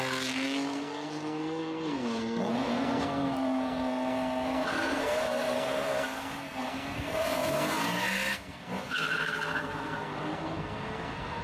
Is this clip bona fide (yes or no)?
no